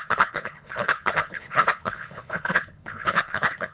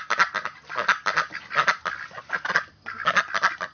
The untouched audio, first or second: second